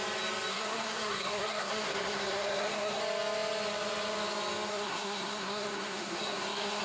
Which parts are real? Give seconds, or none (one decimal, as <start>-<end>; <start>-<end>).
0.0-0.5; 3.0-4.7